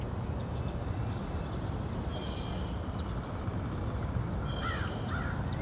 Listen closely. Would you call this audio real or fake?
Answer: real